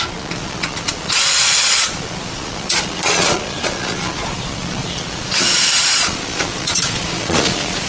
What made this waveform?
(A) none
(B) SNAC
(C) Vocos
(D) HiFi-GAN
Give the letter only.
C